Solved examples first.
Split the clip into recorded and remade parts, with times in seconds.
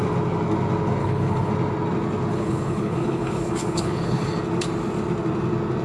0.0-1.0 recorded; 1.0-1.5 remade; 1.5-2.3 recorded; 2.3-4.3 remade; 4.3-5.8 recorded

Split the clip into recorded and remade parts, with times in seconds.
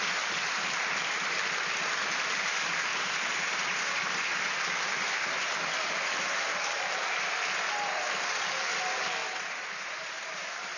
0.0-2.9 recorded; 2.9-4.0 remade; 4.0-9.2 recorded; 9.2-10.8 remade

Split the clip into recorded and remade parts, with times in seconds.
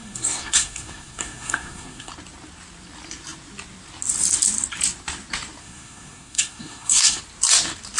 0.0-2.1 remade; 2.1-5.6 recorded; 5.6-7.2 remade; 7.2-8.0 recorded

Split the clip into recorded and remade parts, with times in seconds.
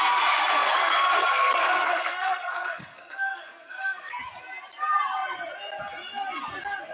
0.0-0.5 recorded; 0.5-4.2 remade; 4.2-6.9 recorded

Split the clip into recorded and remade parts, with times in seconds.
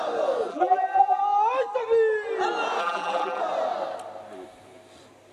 0.0-0.5 recorded; 0.5-1.2 remade; 1.2-2.8 recorded; 2.8-3.4 remade; 3.4-5.3 recorded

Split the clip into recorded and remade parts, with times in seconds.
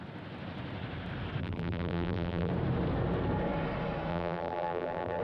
0.0-1.4 recorded; 1.4-2.5 remade; 2.5-4.1 recorded; 4.1-5.2 remade